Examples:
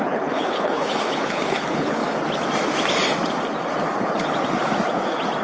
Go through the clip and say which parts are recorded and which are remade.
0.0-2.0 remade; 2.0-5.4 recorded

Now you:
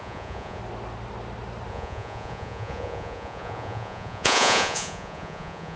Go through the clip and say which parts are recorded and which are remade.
0.0-0.6 remade; 0.6-1.7 recorded; 1.7-5.8 remade

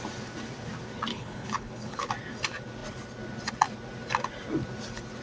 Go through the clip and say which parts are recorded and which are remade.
0.0-1.1 recorded; 1.1-2.1 remade; 2.1-5.2 recorded

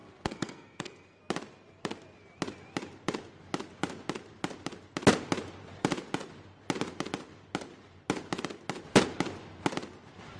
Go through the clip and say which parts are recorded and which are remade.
0.0-1.2 remade; 1.2-10.4 recorded

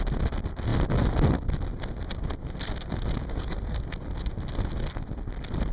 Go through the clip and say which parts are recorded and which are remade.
0.0-3.3 recorded; 3.3-3.8 remade; 3.8-5.7 recorded

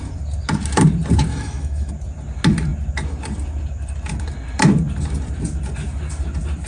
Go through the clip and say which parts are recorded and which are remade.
0.0-1.3 recorded; 1.3-1.9 remade; 1.9-6.7 recorded